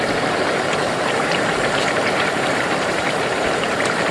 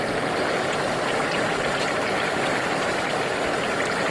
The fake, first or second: first